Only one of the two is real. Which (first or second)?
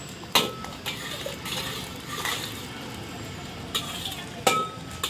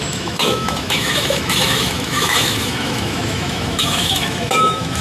first